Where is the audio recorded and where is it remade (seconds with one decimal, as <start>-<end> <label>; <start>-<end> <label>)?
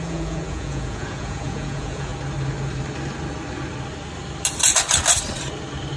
0.0-2.1 remade; 2.1-6.0 recorded